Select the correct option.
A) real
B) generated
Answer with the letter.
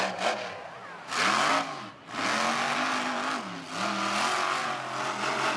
A